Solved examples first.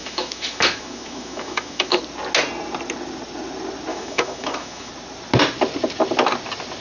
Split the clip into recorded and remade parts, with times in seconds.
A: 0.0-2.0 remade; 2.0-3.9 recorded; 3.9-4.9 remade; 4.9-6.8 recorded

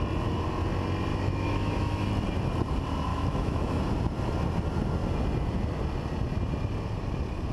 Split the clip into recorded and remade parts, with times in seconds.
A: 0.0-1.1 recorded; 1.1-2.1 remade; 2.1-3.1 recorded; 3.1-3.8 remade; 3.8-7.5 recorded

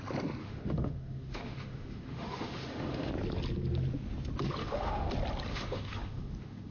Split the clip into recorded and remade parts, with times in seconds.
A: 0.0-0.4 recorded; 0.4-3.1 remade; 3.1-4.6 recorded; 4.6-5.1 remade; 5.1-5.5 recorded; 5.5-6.7 remade